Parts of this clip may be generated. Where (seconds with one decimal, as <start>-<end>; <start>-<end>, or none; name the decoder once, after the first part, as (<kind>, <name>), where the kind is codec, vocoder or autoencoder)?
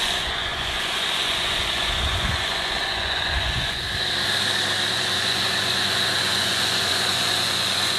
0.0-3.9 (vocoder, Vocos); 4.9-8.0